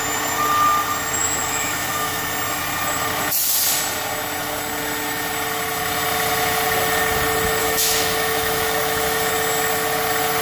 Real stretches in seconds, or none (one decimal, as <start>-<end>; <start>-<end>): 0.0-1.2; 2.2-7.6; 9.3-10.4